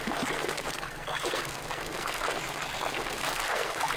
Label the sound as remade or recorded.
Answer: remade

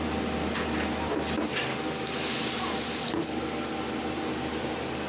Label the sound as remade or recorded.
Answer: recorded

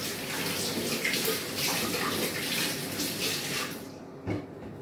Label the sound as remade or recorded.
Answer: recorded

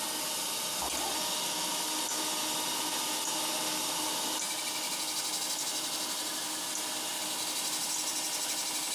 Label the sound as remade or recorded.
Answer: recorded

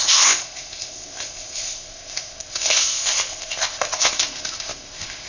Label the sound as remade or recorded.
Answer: remade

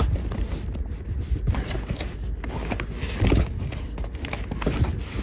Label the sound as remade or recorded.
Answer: recorded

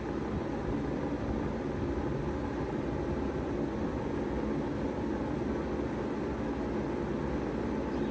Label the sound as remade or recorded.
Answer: recorded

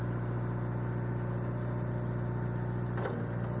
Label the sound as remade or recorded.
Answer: recorded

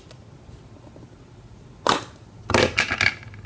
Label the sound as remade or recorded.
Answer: recorded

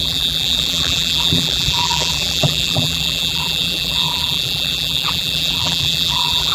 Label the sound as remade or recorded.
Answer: remade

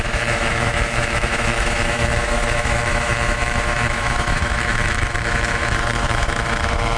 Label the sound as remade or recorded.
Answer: remade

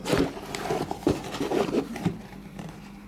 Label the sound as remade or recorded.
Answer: remade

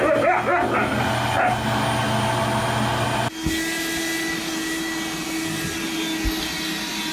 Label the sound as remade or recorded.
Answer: recorded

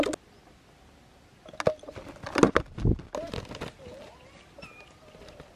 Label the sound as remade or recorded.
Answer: recorded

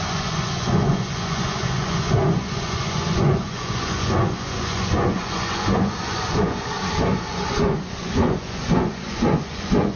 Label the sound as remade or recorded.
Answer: remade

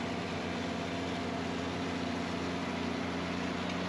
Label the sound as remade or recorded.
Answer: recorded